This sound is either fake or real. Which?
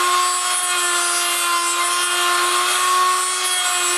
real